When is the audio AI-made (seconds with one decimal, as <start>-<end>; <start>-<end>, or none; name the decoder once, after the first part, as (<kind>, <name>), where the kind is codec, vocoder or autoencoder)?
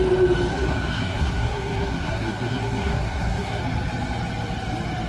0.5-3.6 (codec, SNAC)